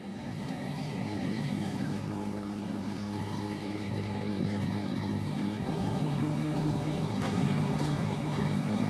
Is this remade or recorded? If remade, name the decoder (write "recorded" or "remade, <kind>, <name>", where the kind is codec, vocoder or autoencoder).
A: remade, codec, SNAC